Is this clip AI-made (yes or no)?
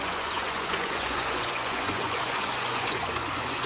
yes